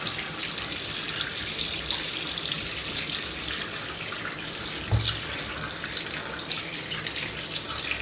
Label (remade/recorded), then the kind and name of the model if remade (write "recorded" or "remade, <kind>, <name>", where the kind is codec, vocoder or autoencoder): recorded